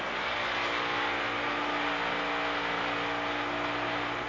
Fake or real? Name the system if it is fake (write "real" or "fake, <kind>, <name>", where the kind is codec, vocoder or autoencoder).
real